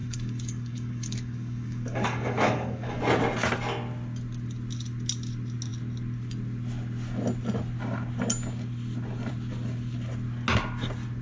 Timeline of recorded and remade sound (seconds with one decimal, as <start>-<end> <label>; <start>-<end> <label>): 0.0-3.0 remade; 3.0-11.2 recorded